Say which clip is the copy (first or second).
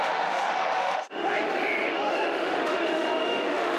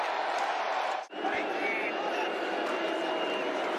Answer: first